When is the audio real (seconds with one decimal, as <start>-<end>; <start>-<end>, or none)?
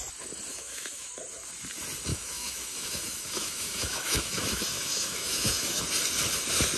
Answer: 0.0-0.5; 1.1-2.1; 5.8-6.8